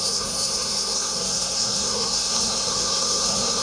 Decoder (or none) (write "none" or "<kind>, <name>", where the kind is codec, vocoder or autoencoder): codec, SNAC